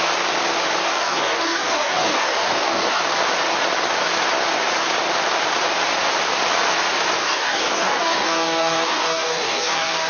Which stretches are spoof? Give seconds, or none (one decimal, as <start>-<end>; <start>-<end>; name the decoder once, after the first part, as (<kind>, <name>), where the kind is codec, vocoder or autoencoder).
0.8-3.0 (codec, DAC); 7.2-10.1